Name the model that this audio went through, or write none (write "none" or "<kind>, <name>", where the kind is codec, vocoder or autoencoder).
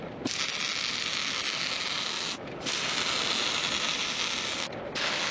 none